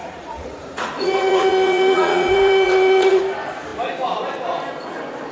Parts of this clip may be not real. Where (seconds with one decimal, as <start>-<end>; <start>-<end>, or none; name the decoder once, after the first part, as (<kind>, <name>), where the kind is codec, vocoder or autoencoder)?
0.0-3.2 (vocoder, Vocos)